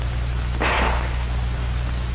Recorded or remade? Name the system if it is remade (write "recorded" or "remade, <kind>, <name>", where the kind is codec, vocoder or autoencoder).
recorded